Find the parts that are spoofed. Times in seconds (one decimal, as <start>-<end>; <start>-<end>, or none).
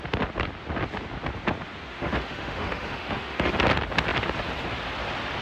1.9-3.5